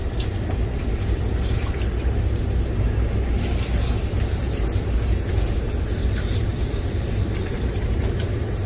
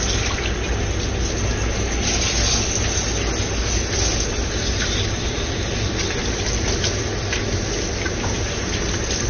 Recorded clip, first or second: second